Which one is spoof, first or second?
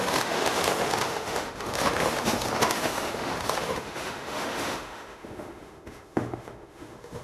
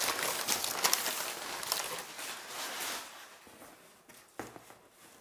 first